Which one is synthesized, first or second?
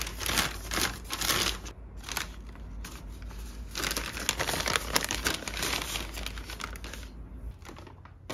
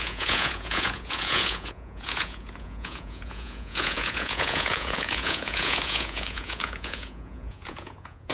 second